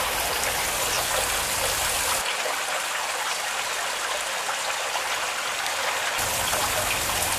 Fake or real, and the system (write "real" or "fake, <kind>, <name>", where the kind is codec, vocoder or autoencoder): real